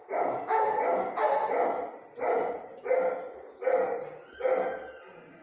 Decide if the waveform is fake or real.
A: real